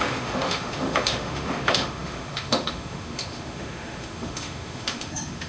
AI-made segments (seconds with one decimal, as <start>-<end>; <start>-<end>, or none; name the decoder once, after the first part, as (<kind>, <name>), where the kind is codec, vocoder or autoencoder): 0.0-5.5 (autoencoder, DAC-VAE)